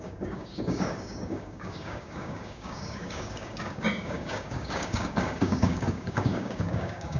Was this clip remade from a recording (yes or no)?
yes